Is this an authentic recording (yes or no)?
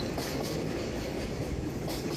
no